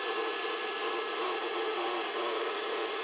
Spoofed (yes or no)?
yes